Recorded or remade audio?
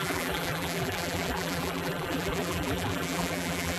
remade